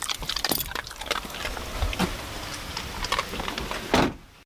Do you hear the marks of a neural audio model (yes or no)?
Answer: no